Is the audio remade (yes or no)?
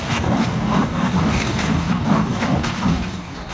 yes